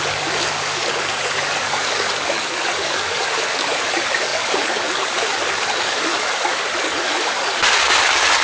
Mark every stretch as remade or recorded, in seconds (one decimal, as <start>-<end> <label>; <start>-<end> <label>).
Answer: 0.0-8.4 remade